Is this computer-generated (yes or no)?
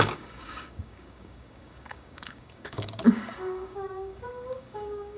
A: yes